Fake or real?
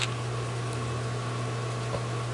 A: real